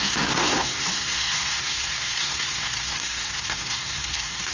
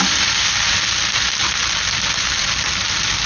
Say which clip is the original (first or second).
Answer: second